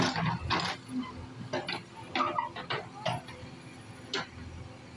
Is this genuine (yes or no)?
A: yes